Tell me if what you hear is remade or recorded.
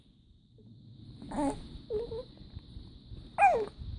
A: recorded